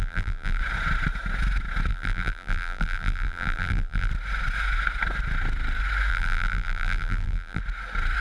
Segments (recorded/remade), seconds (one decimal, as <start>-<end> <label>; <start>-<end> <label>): 0.0-0.6 remade; 0.6-1.9 recorded; 1.9-4.1 remade; 4.1-6.1 recorded; 6.1-7.6 remade; 7.6-8.2 recorded